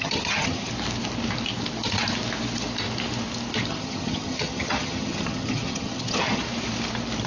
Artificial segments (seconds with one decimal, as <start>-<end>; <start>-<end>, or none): 0.0-0.7; 3.7-6.4